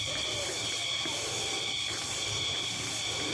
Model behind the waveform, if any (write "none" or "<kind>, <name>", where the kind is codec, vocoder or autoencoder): none